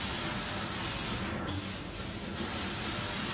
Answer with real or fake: real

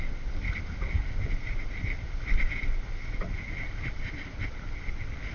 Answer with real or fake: real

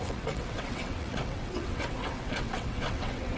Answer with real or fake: fake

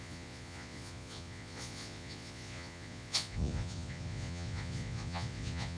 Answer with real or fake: fake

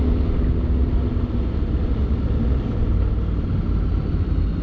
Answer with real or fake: real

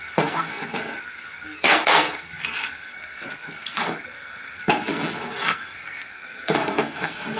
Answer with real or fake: fake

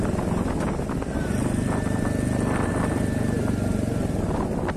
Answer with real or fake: real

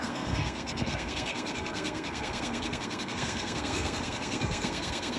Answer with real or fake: fake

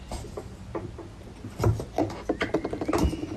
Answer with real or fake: real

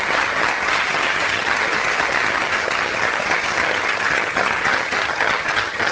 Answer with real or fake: fake